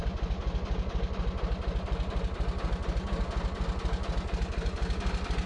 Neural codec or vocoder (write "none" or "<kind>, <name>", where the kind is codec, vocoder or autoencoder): none